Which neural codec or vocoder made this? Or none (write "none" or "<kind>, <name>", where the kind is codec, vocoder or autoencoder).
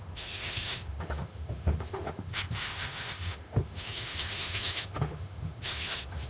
autoencoder, DAC-VAE